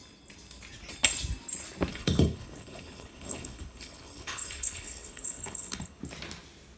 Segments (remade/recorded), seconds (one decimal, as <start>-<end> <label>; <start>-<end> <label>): 0.0-1.9 recorded; 1.9-6.0 remade; 6.0-6.8 recorded